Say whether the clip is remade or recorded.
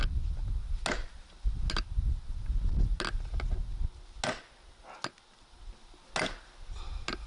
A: recorded